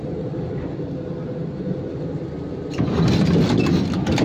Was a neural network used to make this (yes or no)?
no